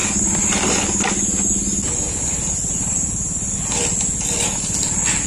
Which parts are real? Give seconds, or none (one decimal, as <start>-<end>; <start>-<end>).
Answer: 0.0-5.3